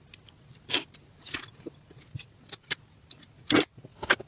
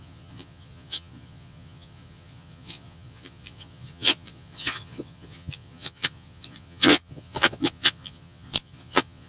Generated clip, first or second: second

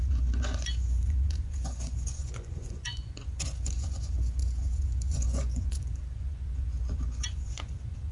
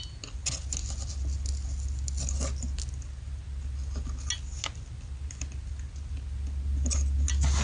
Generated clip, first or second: first